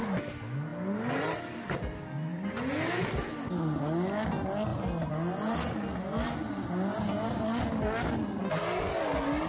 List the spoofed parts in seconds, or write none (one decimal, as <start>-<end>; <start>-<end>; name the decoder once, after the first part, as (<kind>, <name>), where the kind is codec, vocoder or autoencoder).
none